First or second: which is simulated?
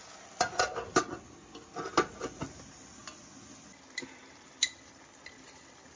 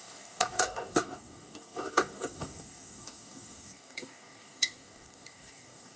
second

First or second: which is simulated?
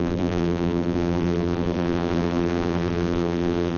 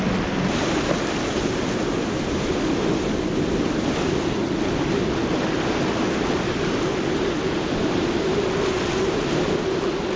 first